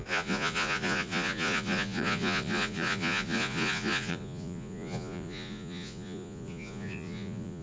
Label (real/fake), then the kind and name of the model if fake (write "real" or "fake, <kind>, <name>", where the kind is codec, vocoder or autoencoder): fake, vocoder, Vocos